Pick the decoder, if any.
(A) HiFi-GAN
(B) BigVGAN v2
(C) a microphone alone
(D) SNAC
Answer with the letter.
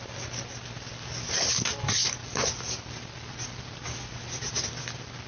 C